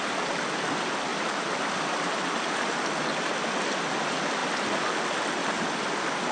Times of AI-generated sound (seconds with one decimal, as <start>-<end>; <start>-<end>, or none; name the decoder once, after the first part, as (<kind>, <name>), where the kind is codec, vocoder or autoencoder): 1.1-2.8 (vocoder, BigVGAN v2)